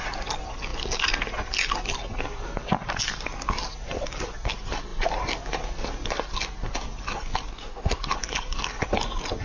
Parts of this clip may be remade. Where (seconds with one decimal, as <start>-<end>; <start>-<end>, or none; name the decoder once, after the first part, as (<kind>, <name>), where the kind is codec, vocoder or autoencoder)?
7.5-8.0 (codec, SNAC)